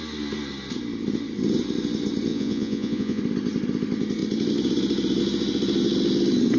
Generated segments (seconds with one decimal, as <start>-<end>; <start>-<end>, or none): 2.3-3.2